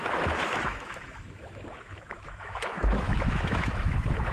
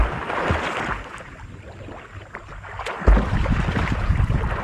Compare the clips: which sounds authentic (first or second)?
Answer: second